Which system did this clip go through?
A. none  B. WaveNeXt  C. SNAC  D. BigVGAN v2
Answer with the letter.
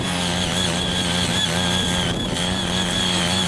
A